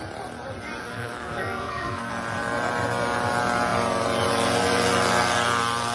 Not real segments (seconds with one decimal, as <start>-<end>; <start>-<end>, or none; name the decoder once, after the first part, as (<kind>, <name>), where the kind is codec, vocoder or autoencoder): 0.8-2.1 (codec, SNAC)